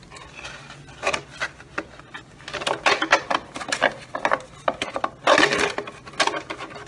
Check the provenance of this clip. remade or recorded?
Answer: recorded